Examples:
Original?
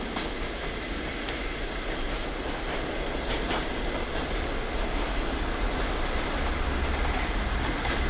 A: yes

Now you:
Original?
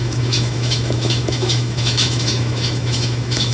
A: no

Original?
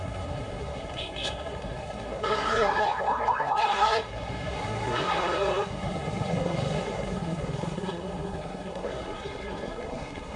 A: no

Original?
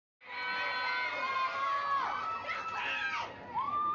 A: yes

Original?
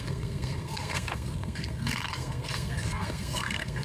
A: no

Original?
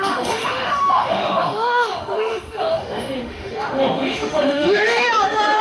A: no